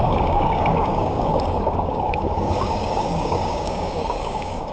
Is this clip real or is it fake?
fake